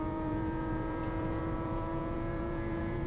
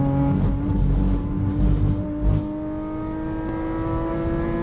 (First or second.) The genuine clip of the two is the second